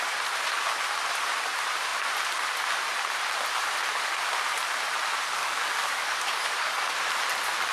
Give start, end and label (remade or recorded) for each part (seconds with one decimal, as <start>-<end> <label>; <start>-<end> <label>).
0.0-5.4 recorded; 5.4-6.9 remade; 6.9-7.7 recorded